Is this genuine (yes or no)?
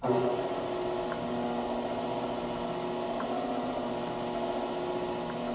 yes